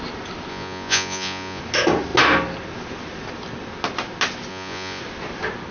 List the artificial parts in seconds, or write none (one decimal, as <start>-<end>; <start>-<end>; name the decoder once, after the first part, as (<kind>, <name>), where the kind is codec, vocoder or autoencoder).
0.5-1.6 (vocoder, Vocos); 4.5-5.0